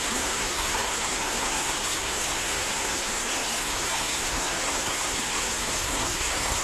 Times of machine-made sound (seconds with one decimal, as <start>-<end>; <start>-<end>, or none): 0.0-6.6

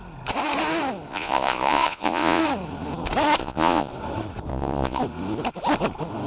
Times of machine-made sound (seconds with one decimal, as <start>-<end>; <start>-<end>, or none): 1.1-2.4; 3.4-3.9; 4.5-5.0